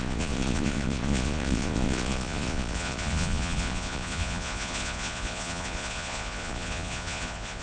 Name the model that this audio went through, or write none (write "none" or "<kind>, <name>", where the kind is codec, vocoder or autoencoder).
vocoder, Vocos